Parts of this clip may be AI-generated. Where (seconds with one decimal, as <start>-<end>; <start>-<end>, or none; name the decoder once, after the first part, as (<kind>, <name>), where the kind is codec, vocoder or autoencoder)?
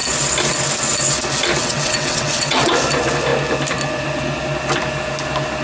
1.6-2.7 (vocoder, WaveNeXt)